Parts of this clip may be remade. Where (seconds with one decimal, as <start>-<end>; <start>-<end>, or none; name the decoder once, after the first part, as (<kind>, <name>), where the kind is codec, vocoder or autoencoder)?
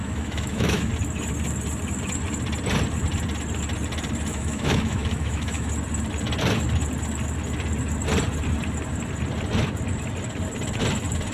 0.0-0.9 (autoencoder, DAC-VAE); 4.3-5.7